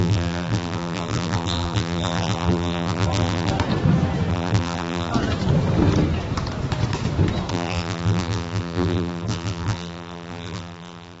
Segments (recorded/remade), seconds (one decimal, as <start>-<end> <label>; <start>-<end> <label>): 0.0-3.5 remade; 3.5-4.3 recorded; 4.3-5.1 remade; 5.1-7.5 recorded; 7.5-11.2 remade

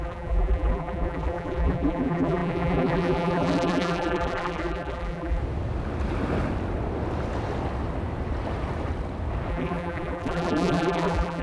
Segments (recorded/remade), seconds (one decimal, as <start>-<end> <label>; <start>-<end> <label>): 0.0-5.4 remade; 5.4-9.5 recorded; 9.5-11.4 remade

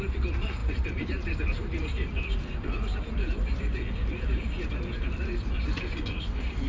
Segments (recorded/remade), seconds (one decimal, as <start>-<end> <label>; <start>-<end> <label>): 0.0-6.7 remade

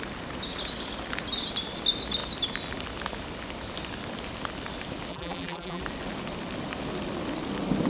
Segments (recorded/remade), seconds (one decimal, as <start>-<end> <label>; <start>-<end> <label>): 0.0-5.1 recorded; 5.1-5.8 remade; 5.8-7.9 recorded